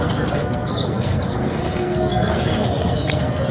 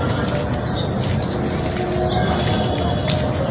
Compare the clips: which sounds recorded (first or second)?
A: second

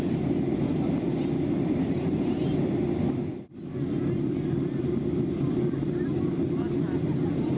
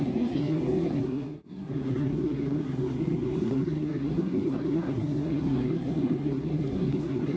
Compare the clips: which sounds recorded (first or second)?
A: first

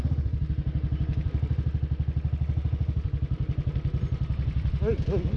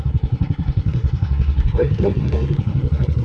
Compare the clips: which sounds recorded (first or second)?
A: first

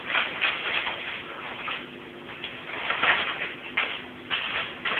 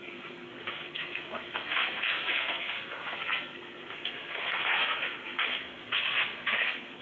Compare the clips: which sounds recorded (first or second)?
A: first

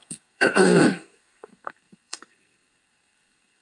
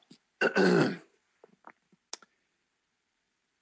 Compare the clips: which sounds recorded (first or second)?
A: second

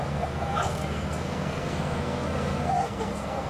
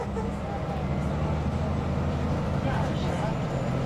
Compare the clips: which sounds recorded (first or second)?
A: second